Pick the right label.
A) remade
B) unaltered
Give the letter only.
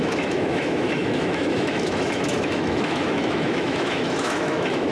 A